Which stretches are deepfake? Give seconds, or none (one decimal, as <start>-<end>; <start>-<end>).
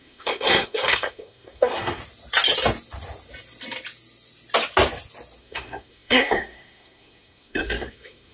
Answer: 0.0-2.0; 5.4-8.3